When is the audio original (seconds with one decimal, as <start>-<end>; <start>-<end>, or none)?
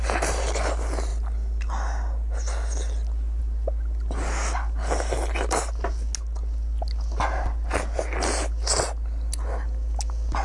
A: 0.0-10.4